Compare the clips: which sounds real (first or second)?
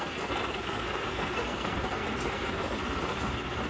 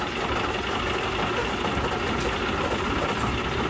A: second